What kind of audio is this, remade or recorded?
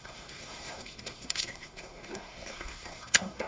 remade